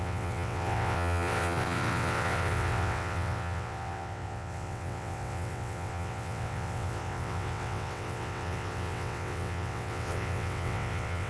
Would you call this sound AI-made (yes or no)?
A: yes